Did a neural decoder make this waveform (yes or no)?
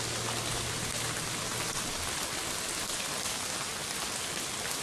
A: no